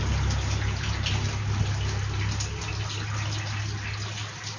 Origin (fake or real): real